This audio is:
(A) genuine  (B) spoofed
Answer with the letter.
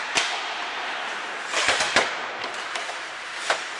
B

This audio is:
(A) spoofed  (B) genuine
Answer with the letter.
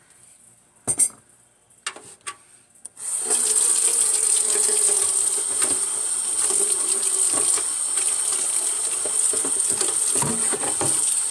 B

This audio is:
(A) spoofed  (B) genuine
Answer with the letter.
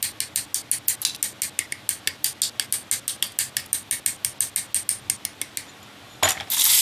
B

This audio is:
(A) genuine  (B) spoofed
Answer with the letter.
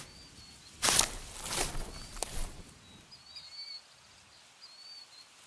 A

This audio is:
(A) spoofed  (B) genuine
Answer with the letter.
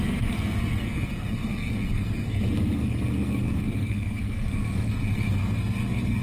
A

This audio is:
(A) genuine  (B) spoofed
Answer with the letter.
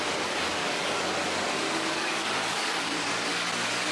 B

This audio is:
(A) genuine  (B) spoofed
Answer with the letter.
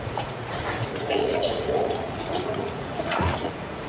B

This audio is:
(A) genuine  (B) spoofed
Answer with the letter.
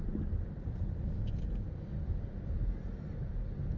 A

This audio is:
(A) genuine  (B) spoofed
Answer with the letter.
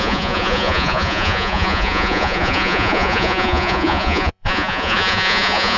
B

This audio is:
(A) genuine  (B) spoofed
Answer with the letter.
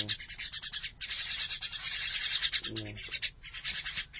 A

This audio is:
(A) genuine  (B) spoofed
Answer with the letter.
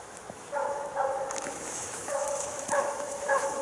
B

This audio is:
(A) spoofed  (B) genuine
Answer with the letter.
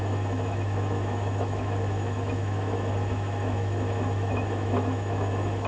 A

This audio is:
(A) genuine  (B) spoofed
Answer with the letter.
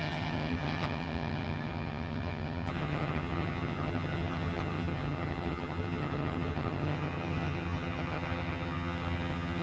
B